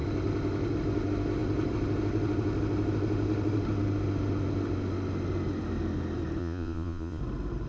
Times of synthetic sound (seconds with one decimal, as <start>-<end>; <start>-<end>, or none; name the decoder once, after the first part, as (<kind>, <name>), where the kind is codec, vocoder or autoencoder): 6.4-7.2 (vocoder, Vocos)